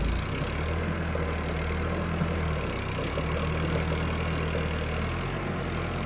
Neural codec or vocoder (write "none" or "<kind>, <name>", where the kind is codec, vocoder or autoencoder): none